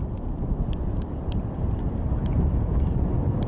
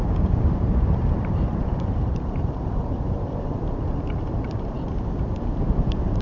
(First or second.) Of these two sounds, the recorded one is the first